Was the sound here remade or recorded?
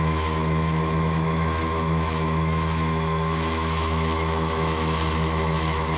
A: remade